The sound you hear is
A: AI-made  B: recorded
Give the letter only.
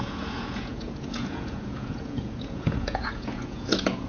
A